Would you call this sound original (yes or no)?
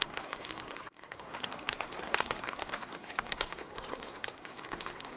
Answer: no